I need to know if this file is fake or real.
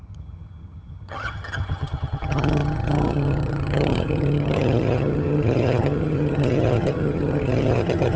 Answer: fake